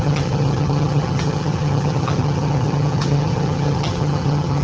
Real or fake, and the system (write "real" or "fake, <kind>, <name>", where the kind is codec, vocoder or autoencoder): fake, vocoder, HiFi-GAN